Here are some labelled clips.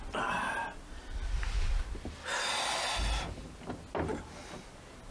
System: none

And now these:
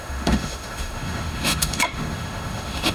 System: autoencoder, DAC-VAE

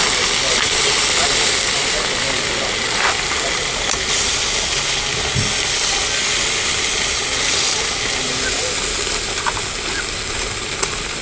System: none